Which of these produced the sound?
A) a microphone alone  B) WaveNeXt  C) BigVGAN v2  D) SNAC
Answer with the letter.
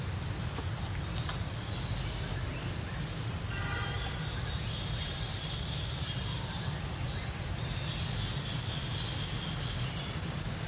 A